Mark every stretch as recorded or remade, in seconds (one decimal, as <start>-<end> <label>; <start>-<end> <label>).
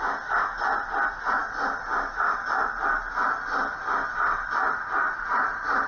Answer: 0.0-5.9 recorded